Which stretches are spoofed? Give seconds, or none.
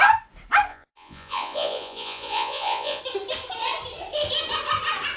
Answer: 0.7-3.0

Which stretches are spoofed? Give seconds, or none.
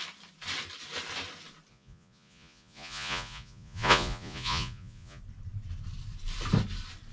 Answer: 1.7-5.2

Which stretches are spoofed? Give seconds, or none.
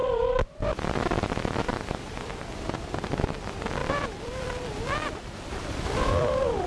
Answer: 0.0-2.3; 3.8-6.7